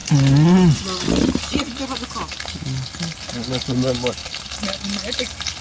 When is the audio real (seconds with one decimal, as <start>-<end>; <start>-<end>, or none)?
0.0-5.6